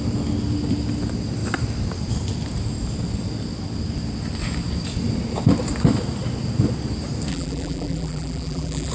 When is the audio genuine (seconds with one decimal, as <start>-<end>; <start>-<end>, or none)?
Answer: 0.0-7.3